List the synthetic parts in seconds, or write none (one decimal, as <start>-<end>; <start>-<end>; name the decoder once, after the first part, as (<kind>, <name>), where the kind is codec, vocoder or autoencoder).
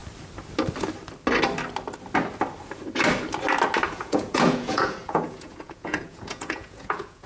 3.9-7.3 (vocoder, Vocos)